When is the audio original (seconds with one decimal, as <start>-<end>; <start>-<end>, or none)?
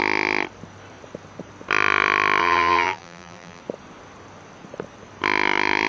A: 0.0-2.4; 3.6-5.9